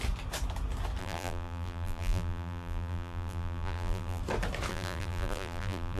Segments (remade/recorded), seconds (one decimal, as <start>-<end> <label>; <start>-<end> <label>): 0.0-1.0 recorded; 1.0-4.2 remade; 4.2-4.7 recorded; 4.7-6.0 remade